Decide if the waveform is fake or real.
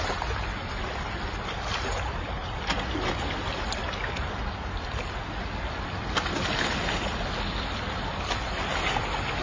real